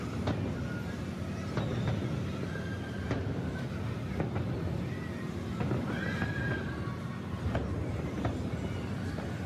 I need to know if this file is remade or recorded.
recorded